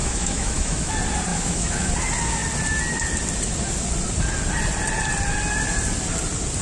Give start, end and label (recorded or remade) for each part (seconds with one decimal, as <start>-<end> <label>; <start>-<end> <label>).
0.0-0.9 remade; 0.9-1.3 recorded; 1.3-1.9 remade; 1.9-6.6 recorded

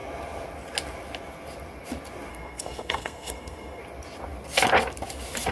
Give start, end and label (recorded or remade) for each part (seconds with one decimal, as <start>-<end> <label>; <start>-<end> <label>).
0.0-2.3 recorded; 2.3-3.8 remade; 3.8-5.5 recorded

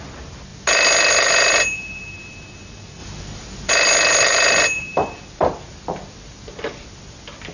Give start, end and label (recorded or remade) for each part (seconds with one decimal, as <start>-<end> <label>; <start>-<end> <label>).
0.0-7.5 recorded

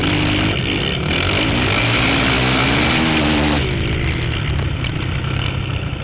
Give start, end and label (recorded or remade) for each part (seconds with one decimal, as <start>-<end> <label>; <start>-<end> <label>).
0.0-6.0 recorded